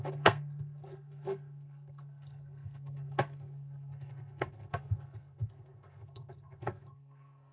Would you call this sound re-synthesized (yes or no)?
yes